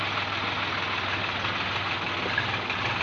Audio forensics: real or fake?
real